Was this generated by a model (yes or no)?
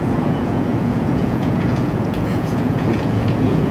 yes